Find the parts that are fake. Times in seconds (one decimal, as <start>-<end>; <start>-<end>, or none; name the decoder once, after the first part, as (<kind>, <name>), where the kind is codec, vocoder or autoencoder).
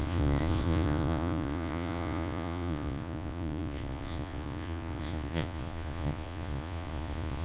0.0-7.4 (vocoder, Vocos)